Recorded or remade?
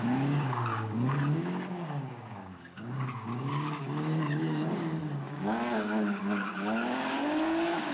remade